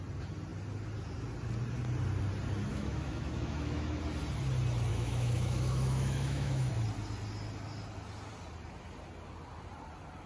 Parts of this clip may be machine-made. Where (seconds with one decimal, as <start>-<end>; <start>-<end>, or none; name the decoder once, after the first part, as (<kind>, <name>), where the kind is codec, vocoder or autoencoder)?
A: 2.7-4.0 (autoencoder, DAC-VAE); 4.9-6.7